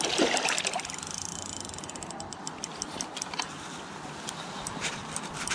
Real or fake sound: real